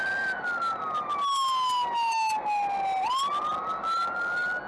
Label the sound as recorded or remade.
recorded